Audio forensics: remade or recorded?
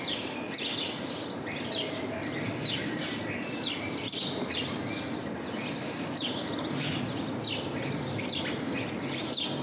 recorded